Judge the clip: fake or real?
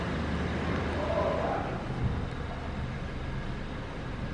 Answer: real